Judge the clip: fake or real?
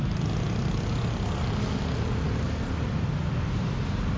real